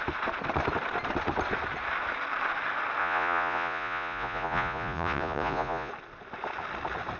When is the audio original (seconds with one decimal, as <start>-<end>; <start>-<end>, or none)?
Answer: 0.0-3.0; 5.9-7.2